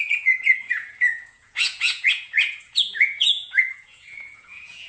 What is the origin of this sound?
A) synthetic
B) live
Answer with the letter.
A